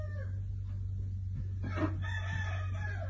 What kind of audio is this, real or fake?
real